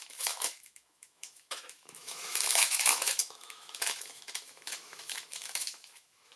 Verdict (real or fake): fake